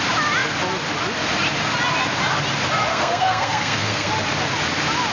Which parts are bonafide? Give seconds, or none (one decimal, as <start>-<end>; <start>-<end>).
0.0-2.9; 4.1-5.1